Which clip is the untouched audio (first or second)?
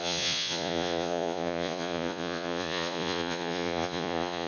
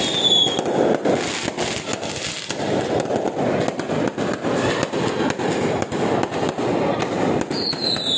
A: second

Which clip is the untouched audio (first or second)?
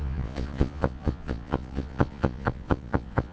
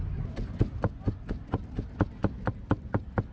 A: second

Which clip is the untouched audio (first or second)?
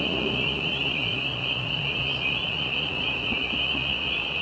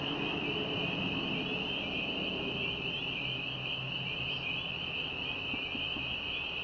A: second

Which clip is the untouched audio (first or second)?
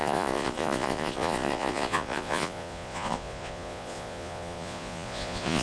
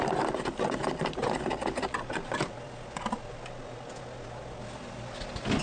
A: second